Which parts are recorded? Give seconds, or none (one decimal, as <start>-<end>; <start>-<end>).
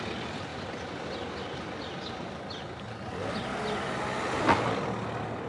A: 0.0-5.5